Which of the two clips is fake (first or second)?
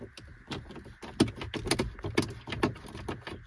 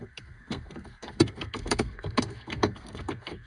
second